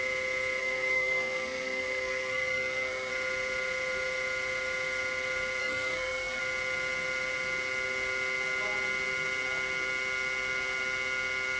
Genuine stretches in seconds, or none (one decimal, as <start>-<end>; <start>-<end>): 0.0-0.6; 3.1-5.6; 6.4-11.6